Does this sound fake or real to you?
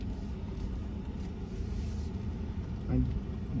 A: real